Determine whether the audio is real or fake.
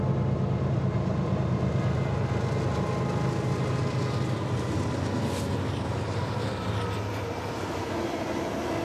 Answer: real